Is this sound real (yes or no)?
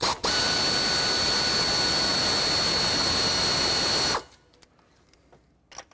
yes